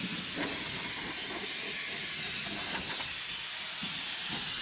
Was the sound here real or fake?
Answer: real